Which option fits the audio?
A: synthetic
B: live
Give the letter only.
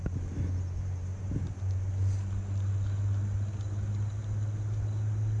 B